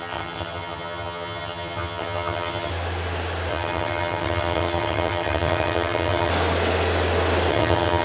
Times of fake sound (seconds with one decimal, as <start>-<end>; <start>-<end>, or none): 0.0-2.7; 3.5-6.3; 7.5-8.0